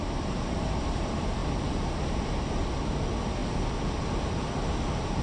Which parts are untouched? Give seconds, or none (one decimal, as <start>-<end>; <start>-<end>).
0.0-5.2